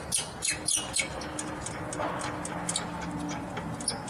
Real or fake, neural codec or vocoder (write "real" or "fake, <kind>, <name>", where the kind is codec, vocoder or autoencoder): real